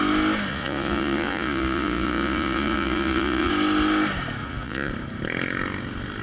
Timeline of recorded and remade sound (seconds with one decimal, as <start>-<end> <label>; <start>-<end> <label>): 0.0-0.5 recorded; 0.5-3.5 remade; 3.5-4.4 recorded; 4.4-4.9 remade; 4.9-6.2 recorded